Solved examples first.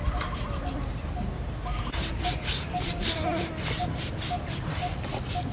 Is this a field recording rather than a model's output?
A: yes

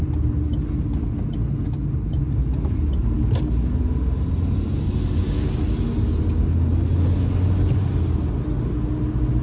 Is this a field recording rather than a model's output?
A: yes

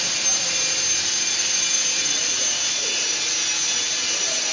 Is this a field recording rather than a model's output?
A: yes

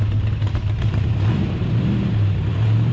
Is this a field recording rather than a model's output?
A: no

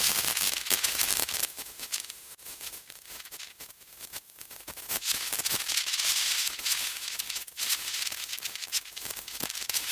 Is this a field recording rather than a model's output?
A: no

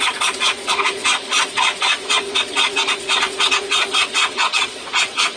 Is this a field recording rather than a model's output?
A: no